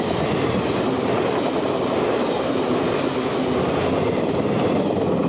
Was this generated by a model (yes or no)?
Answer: no